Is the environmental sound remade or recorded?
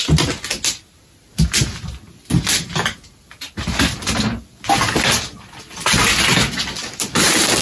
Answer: recorded